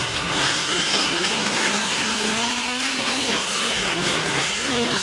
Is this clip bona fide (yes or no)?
no